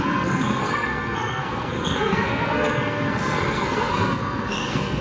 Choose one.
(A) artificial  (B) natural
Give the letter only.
A